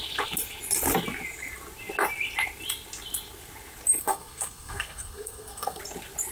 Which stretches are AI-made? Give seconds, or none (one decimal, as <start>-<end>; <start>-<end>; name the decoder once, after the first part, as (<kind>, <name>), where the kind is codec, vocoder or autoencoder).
4.0-5.8 (codec, SNAC)